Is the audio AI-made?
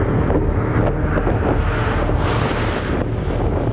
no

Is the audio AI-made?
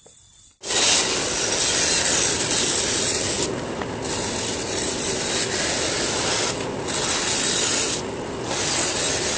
no